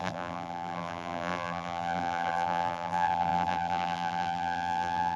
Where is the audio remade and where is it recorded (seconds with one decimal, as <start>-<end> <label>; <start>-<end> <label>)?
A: 0.0-5.2 remade